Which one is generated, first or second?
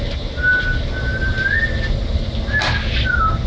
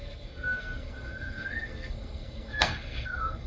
second